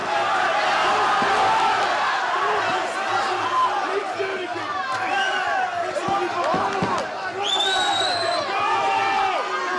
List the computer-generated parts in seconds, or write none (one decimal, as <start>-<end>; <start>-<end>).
none

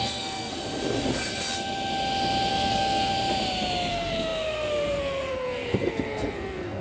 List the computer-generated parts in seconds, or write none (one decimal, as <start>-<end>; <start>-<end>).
0.0-0.6; 2.5-3.1; 3.9-6.8

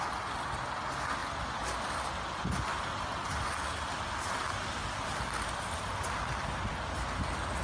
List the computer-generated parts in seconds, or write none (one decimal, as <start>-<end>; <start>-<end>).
none

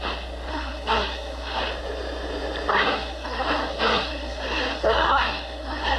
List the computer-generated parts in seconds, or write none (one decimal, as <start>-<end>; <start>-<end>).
0.5-1.6; 2.7-6.0

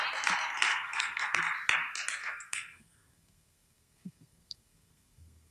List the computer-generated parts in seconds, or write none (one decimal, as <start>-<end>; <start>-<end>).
0.7-1.4; 2.2-5.5

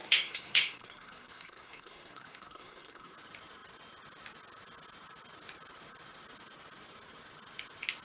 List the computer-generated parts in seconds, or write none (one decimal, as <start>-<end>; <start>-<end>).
0.0-3.1

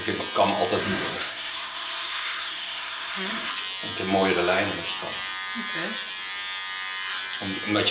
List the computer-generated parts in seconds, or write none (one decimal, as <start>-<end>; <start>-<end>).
0.8-3.5

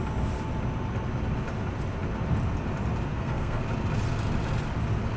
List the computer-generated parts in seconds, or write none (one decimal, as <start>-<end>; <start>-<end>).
3.1-3.6